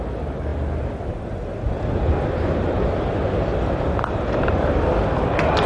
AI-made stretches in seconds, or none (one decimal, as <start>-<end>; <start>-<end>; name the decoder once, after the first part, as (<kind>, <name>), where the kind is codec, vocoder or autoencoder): none